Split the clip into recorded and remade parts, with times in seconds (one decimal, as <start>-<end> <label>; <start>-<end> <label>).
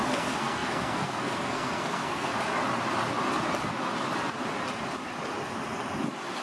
0.0-2.3 remade; 2.3-6.4 recorded